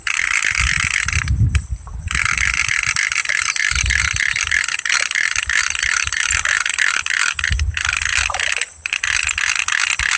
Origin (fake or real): real